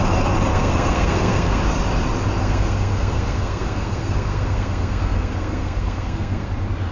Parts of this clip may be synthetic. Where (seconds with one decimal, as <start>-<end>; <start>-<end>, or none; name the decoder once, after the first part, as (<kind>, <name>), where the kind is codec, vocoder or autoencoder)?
0.5-1.6 (codec, SNAC); 2.4-6.5